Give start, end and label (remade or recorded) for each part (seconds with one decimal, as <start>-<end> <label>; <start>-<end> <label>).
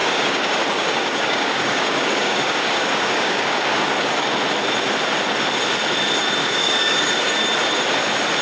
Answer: 0.0-4.3 remade; 4.3-6.4 recorded; 6.4-7.1 remade; 7.1-8.4 recorded